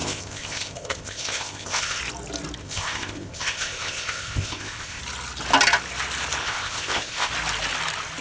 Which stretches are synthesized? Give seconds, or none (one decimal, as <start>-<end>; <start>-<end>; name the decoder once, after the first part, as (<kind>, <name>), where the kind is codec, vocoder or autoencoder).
0.0-2.0 (codec, ZipCodec); 2.6-5.0; 6.4-7.3